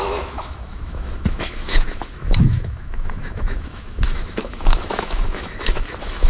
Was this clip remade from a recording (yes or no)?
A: yes